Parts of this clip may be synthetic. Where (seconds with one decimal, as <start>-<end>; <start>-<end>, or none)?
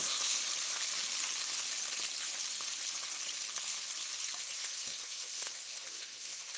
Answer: 0.0-0.4; 4.4-6.6